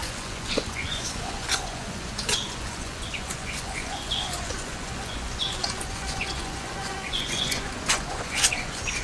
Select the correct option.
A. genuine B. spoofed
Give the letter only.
B